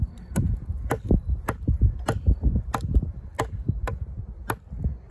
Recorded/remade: recorded